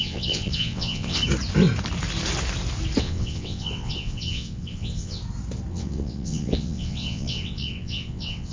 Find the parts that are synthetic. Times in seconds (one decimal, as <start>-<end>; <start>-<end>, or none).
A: 0.0-1.2; 3.0-5.2; 5.7-8.5

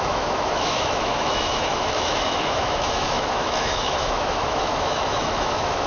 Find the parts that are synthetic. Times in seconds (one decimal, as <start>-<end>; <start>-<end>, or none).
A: 0.0-5.9

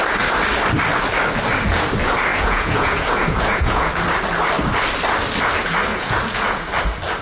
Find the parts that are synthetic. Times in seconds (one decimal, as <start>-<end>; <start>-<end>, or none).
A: 2.3-3.9; 5.9-6.7

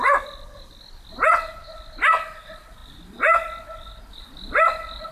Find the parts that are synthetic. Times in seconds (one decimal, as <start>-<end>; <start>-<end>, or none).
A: none

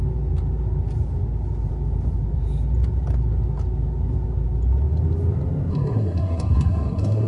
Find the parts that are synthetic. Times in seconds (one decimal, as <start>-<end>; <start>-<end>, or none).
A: 5.7-7.3

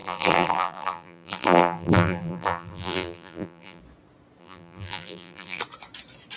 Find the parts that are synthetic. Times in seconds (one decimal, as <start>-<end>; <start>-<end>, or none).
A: 0.0-3.8; 4.4-5.6

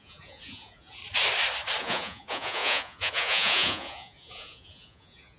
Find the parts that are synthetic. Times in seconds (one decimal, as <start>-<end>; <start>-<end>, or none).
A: 0.0-1.0; 1.8-5.4

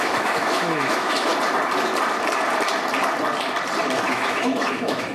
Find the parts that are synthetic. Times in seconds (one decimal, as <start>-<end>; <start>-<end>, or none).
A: 0.0-1.3; 4.0-5.1